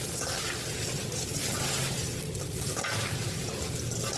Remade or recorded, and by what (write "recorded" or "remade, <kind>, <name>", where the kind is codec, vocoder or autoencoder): recorded